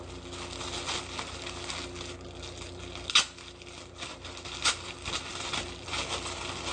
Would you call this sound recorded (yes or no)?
yes